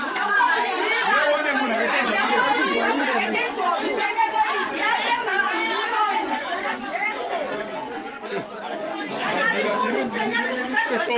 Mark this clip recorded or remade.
remade